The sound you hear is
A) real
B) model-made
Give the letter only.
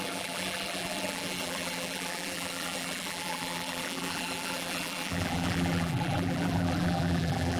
B